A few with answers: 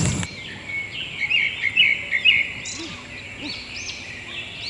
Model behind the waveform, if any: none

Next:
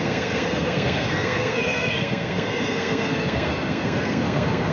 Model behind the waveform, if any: codec, SNAC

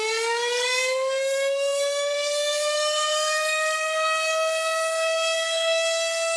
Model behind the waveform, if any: codec, SNAC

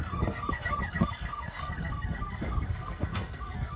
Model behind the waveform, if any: codec, SNAC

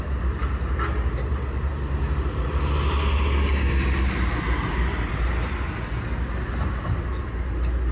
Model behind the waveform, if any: none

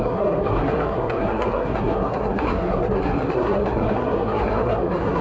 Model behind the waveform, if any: codec, SNAC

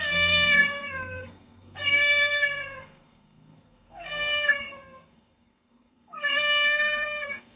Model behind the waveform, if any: codec, SNAC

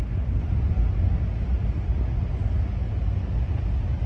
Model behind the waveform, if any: none